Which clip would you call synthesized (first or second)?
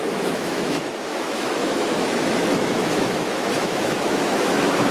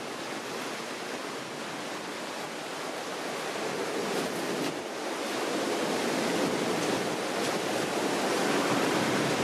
first